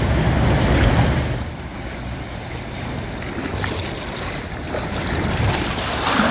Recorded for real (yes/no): yes